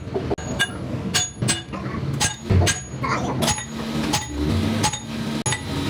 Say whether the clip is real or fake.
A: real